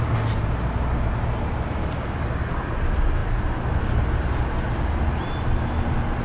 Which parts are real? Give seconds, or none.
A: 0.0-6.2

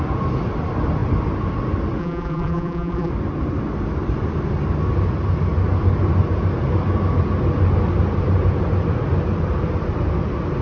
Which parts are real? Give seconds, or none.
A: 0.0-2.0; 3.1-10.6

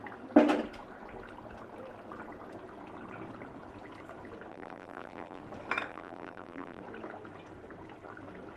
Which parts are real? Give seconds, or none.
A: 0.0-4.5; 5.4-5.9; 6.8-8.6

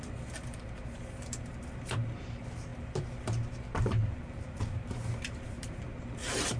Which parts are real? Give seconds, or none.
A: none

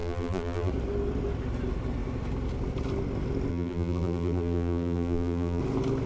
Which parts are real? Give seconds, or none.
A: 0.7-3.5; 5.6-6.1

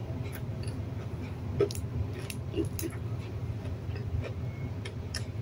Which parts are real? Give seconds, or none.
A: 0.0-5.4

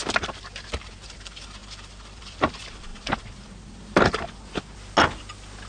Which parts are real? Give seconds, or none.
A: 0.0-1.6; 2.5-5.7